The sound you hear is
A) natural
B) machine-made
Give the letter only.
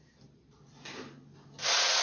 A